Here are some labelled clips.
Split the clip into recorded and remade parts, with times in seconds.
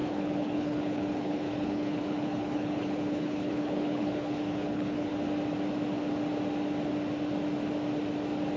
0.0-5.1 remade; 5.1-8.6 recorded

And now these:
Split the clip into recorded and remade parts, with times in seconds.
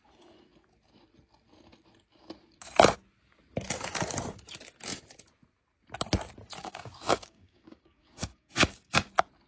0.0-6.6 recorded; 6.6-9.1 remade; 9.1-9.5 recorded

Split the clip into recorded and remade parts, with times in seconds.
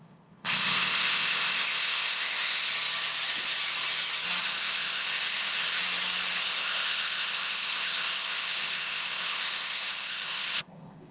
0.0-2.7 remade; 2.7-4.4 recorded; 4.4-5.8 remade; 5.8-6.4 recorded; 6.4-11.1 remade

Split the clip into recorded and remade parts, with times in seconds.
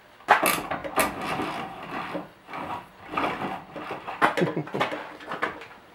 0.0-5.9 recorded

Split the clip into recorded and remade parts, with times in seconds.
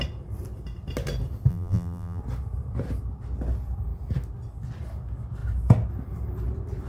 0.0-1.5 recorded; 1.5-2.2 remade; 2.2-6.9 recorded